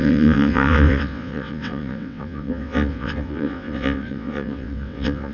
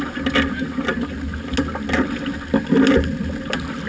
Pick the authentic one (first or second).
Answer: second